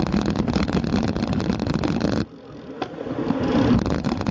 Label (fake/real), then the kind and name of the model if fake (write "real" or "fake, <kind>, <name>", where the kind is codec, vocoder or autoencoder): real